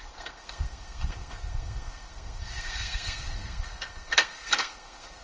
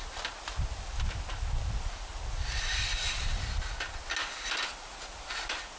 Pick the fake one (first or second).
first